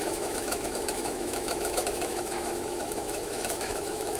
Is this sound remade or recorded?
remade